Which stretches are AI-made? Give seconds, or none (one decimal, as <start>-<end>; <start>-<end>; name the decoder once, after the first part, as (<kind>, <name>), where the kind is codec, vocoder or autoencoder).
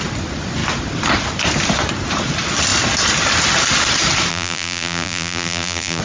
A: 4.3-6.0 (vocoder, BigVGAN v2)